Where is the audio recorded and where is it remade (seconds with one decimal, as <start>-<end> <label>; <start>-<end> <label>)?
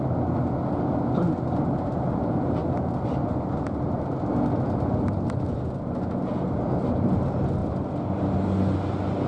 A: 0.0-7.6 recorded; 7.6-8.8 remade; 8.8-9.3 recorded